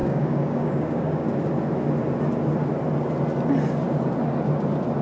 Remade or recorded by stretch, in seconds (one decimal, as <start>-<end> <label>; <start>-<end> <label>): 0.0-1.3 remade; 1.3-5.0 recorded